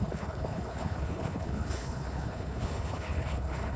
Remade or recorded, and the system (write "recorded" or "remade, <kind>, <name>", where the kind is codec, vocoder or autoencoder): remade, codec, HILCodec